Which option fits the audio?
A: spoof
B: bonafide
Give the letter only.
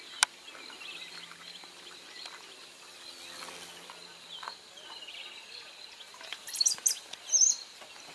B